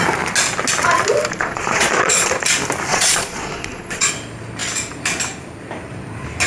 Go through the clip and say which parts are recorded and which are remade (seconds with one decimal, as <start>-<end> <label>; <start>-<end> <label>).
0.0-1.3 recorded; 1.3-2.3 remade; 2.3-2.9 recorded; 2.9-4.1 remade; 4.1-6.5 recorded